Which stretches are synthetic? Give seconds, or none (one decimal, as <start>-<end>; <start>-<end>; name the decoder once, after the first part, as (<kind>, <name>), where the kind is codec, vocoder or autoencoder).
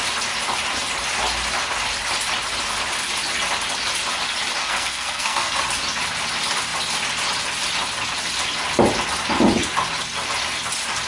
4.6-5.6 (codec, SNAC)